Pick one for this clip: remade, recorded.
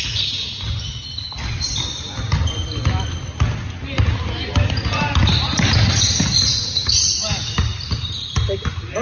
recorded